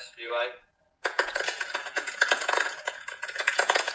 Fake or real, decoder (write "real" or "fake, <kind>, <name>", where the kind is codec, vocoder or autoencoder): fake, vocoder, Vocos